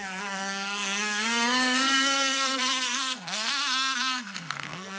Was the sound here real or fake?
fake